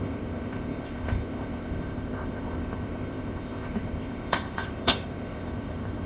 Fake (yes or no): yes